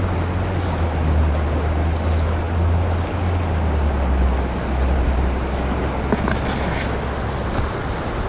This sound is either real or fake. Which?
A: real